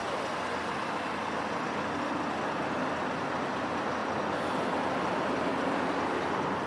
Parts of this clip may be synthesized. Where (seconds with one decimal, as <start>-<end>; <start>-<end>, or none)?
4.0-4.5